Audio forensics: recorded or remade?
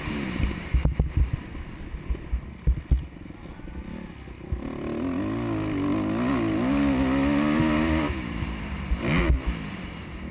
recorded